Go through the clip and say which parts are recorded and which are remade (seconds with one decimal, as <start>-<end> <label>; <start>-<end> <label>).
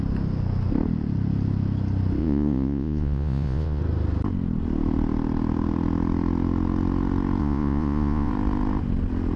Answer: 0.0-2.2 recorded; 2.2-3.8 remade; 3.8-7.4 recorded; 7.4-8.3 remade; 8.3-9.4 recorded